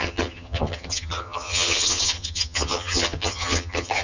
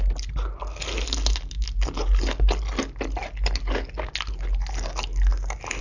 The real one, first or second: second